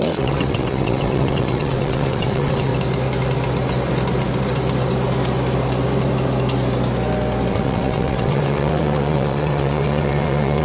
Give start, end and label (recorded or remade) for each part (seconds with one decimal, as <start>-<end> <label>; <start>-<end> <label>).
0.0-2.7 remade; 2.7-7.5 recorded; 7.5-10.6 remade